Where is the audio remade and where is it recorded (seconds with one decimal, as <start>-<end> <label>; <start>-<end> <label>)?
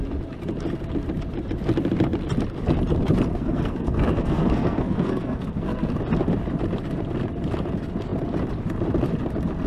0.0-3.3 recorded; 3.3-5.9 remade; 5.9-9.7 recorded